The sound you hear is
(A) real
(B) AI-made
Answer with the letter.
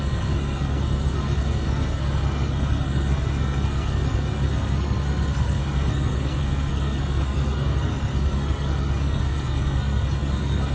B